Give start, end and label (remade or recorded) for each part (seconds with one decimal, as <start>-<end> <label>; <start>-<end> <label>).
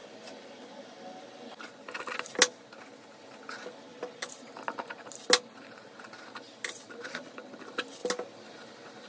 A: 0.0-9.1 recorded